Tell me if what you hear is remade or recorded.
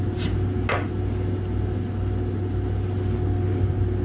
recorded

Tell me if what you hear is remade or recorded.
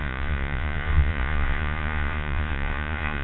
remade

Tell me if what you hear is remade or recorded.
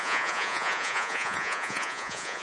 remade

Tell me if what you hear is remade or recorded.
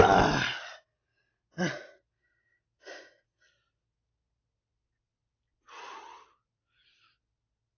recorded